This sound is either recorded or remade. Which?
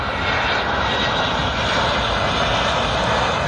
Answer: recorded